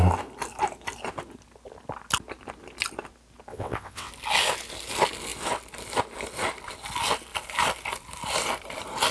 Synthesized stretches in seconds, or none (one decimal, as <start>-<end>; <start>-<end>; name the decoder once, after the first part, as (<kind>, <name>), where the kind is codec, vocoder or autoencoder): 3.5-4.1 (vocoder, WaveNeXt)